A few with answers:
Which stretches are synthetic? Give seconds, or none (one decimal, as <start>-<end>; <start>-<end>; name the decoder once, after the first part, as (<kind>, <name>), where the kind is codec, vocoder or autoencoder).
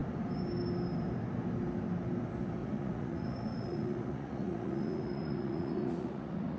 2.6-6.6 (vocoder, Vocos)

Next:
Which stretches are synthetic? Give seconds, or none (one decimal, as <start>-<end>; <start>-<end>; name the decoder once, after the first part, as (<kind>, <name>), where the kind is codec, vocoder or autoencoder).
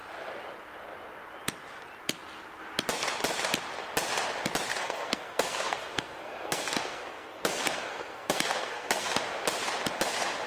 4.7-9.2 (codec, SNAC)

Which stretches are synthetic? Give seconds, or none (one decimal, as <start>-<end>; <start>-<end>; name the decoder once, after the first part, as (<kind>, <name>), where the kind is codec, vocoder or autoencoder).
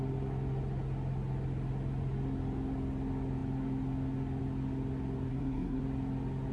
5.3-5.8 (codec, SNAC)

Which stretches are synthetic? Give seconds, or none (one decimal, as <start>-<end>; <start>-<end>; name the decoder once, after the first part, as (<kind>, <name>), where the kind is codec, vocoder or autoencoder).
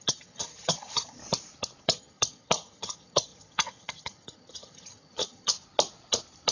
0.0-1.2 (vocoder, HiFi-GAN); 1.8-5.5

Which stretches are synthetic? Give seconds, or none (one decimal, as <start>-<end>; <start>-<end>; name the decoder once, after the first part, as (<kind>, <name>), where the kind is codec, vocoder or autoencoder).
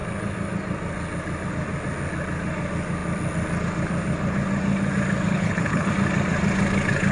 5.3-5.9 (codec, HILCodec)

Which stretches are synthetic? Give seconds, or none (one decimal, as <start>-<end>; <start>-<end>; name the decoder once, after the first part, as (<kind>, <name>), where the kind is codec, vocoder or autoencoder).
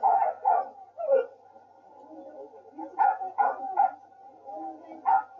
2.9-4.1 (vocoder, Vocos)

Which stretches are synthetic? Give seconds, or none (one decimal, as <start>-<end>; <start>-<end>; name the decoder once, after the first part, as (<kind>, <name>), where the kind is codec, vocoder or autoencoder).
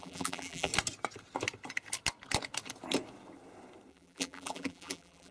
0.0-0.7 (vocoder, BigVGAN v2); 3.9-5.3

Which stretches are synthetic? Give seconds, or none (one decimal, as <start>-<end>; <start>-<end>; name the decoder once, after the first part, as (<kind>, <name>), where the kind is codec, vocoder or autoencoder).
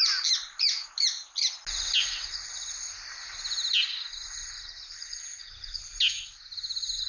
none